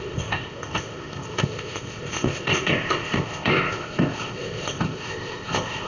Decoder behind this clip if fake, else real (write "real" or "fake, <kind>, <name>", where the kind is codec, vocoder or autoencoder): fake, codec, ZipCodec